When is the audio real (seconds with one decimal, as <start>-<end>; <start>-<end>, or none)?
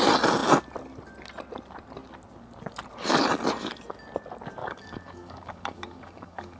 0.0-4.6